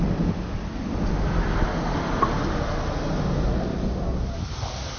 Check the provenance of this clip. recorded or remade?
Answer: recorded